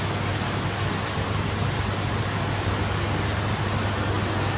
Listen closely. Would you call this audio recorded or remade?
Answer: recorded